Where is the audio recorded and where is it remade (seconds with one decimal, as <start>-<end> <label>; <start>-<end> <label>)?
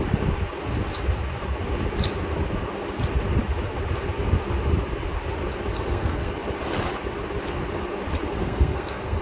0.0-5.7 recorded; 5.7-6.3 remade; 6.3-8.4 recorded; 8.4-9.2 remade